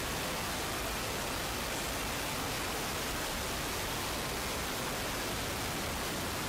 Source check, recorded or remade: recorded